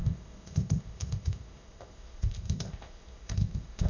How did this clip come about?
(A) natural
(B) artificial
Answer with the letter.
B